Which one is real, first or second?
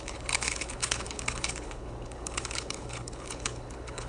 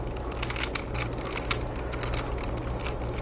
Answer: second